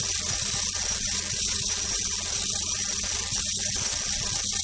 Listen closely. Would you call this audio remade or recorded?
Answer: recorded